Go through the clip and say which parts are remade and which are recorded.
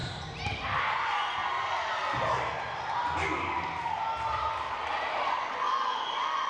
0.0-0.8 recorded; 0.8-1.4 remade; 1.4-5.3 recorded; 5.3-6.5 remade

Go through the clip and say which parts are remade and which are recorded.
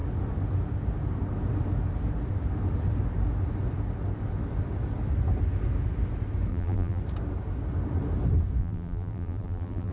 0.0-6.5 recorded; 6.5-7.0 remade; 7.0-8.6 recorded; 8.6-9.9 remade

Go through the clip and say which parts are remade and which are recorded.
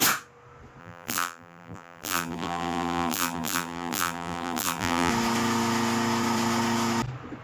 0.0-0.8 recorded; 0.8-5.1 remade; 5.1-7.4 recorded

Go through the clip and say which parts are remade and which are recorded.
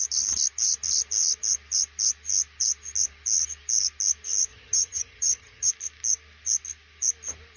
0.0-4.5 recorded; 4.5-5.7 remade; 5.7-7.6 recorded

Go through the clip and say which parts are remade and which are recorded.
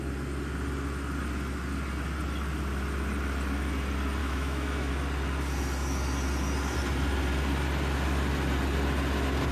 0.0-4.2 recorded; 4.2-4.9 remade; 4.9-9.5 recorded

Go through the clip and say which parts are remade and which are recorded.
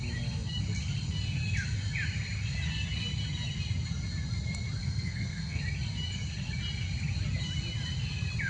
0.0-4.8 recorded; 4.8-5.6 remade; 5.6-8.5 recorded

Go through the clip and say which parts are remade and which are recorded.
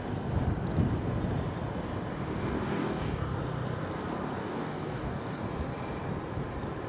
0.0-2.5 recorded; 2.5-3.4 remade; 3.4-4.4 recorded; 4.4-5.4 remade; 5.4-6.9 recorded